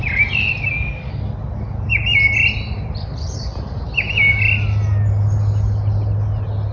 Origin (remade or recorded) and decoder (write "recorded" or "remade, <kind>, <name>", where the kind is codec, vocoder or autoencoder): recorded